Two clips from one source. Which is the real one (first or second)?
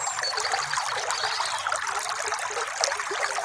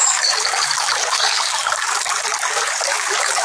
first